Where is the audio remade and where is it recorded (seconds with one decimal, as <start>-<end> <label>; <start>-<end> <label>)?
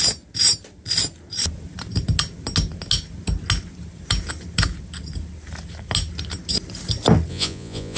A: 0.0-7.3 recorded; 7.3-8.0 remade